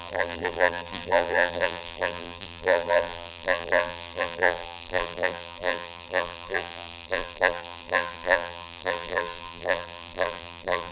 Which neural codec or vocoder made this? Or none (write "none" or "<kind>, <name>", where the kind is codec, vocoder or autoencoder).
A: vocoder, BigVGAN v2